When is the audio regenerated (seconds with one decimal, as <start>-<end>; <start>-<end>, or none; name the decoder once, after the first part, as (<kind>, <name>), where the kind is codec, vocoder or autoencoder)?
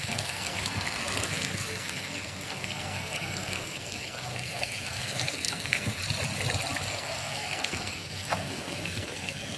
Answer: 0.0-6.0 (codec, SNAC); 6.9-9.6